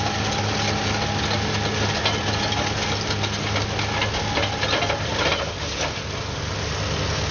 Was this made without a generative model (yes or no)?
yes